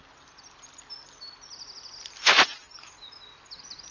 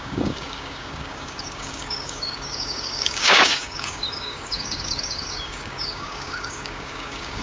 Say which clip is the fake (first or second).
second